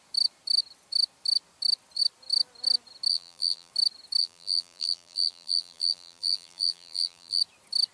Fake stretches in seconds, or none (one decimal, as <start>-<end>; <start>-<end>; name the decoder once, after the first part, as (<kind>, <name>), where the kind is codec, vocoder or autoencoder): 3.1-3.7 (vocoder, BigVGAN v2); 4.2-7.4